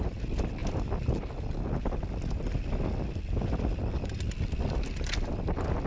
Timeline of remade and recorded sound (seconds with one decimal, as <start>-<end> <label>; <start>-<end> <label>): 0.0-5.9 recorded